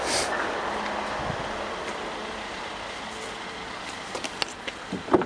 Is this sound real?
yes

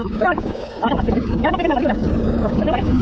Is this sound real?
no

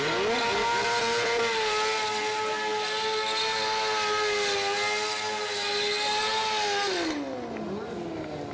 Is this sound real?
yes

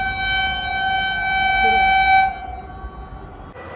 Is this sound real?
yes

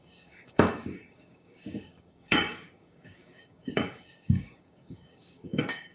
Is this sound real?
no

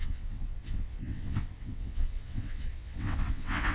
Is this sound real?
no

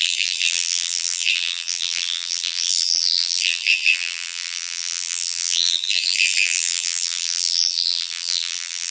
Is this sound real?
no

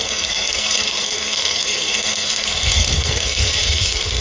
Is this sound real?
no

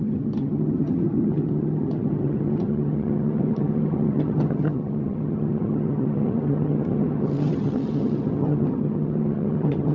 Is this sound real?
no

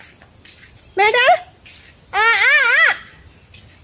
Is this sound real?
yes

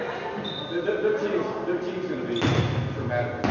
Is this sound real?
yes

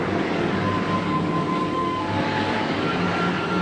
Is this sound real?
no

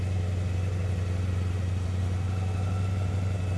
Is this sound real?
yes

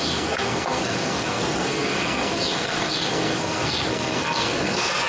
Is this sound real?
no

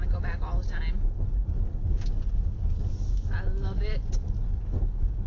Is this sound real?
yes